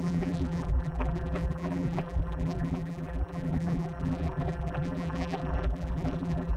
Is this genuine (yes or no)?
no